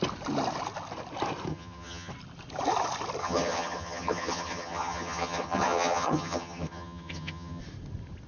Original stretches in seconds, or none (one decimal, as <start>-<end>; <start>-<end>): 0.0-1.5; 2.1-3.2; 7.6-8.3